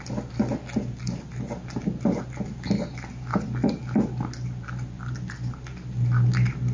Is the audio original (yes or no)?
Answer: yes